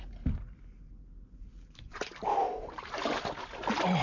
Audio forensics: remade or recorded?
recorded